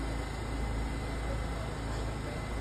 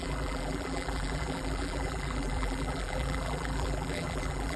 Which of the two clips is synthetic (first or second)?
second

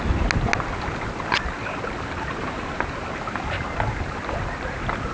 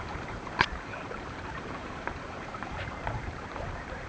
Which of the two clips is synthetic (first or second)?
second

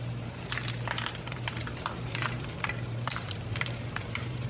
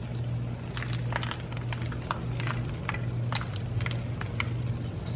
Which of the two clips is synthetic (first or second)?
first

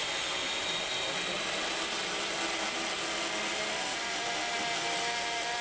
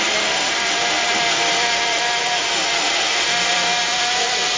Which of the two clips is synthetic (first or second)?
second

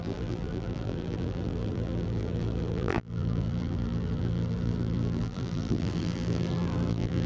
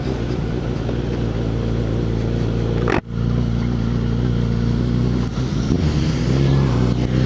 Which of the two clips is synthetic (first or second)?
first